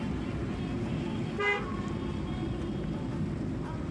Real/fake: real